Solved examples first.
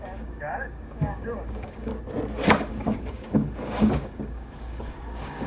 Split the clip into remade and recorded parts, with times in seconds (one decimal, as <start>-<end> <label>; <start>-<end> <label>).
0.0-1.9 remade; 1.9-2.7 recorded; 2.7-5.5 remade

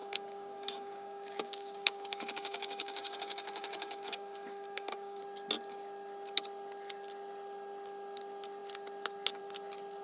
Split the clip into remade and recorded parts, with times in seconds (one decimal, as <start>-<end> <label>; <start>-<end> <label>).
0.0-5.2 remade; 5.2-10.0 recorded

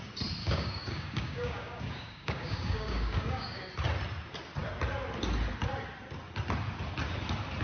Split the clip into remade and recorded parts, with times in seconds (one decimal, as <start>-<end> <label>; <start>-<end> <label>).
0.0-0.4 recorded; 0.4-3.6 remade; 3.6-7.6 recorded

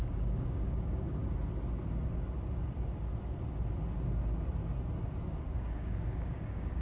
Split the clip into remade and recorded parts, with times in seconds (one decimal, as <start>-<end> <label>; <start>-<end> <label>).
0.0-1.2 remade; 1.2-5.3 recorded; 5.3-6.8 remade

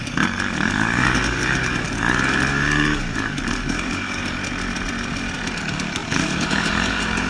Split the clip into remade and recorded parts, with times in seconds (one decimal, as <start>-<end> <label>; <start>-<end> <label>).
0.0-4.4 remade; 4.4-5.6 recorded; 5.6-7.3 remade